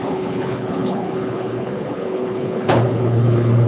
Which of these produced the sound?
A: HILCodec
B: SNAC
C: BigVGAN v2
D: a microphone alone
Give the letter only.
A